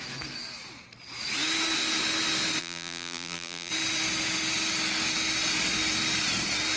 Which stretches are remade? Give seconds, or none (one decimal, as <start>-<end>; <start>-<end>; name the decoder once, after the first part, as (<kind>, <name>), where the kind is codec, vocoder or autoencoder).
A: 2.6-3.7 (vocoder, BigVGAN v2)